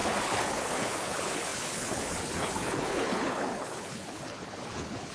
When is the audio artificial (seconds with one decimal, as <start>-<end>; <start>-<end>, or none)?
0.0-5.1

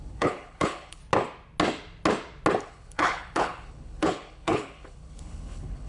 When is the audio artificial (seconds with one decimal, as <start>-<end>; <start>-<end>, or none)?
0.0-1.0; 2.6-5.9

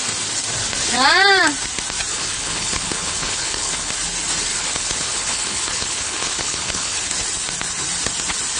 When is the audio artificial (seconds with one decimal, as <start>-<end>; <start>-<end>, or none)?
2.1-3.9; 4.5-7.0

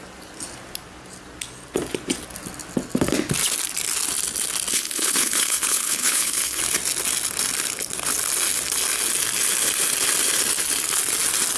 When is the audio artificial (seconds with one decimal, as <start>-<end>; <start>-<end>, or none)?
4.7-6.6

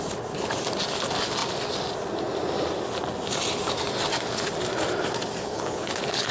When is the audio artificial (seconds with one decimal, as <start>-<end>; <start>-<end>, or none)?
5.4-6.3

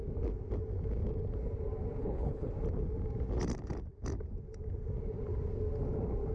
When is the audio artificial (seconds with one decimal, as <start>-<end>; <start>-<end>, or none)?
2.0-2.5